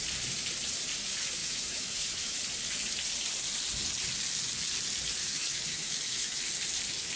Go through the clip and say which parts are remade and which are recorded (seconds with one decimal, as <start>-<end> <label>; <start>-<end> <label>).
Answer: 0.0-1.4 recorded; 1.4-2.4 remade; 2.4-5.2 recorded; 5.2-6.5 remade; 6.5-7.2 recorded